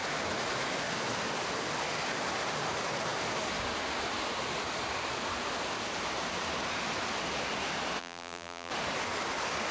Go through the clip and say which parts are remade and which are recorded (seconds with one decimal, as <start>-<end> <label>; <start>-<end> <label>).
0.0-8.0 recorded; 8.0-8.7 remade; 8.7-9.7 recorded